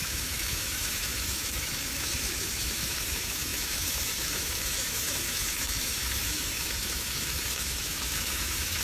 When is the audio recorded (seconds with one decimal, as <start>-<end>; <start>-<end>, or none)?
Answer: none